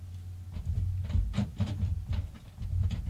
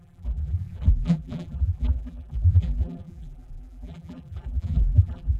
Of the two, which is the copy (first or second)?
second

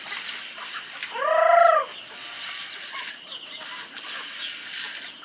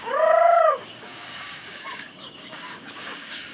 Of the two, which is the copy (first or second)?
second